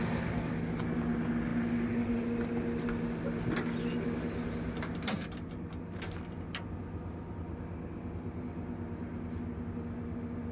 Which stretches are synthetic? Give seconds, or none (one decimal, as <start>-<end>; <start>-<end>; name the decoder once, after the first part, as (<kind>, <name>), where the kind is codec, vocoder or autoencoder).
none